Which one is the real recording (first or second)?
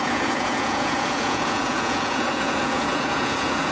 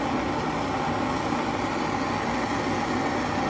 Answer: second